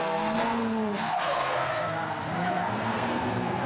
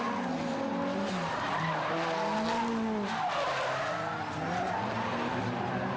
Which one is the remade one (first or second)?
first